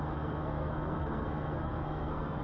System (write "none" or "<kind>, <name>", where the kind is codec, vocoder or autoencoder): codec, SNAC